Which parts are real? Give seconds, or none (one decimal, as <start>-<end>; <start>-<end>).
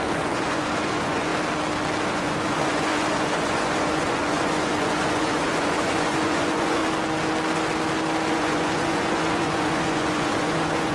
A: 1.3-2.1; 6.8-8.3